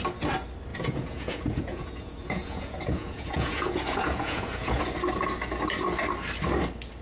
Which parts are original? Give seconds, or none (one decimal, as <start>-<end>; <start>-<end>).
0.0-0.7; 4.8-7.0